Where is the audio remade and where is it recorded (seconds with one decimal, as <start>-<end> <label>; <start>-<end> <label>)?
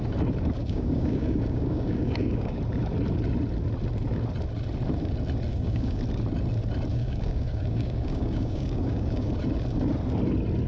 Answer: 0.0-0.6 recorded; 0.6-2.6 remade; 2.6-5.5 recorded; 5.5-6.0 remade; 6.0-6.9 recorded; 6.9-9.3 remade; 9.3-10.7 recorded